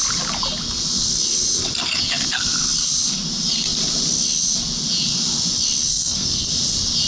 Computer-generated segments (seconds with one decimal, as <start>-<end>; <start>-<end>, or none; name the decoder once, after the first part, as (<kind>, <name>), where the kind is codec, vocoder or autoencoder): 5.9-6.5 (codec, SNAC)